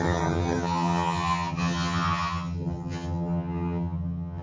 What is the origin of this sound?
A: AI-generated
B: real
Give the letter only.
A